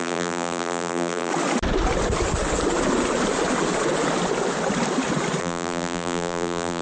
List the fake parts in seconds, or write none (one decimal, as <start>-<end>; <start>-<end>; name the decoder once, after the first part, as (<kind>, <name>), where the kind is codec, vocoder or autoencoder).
0.0-1.3 (vocoder, BigVGAN v2); 5.4-6.8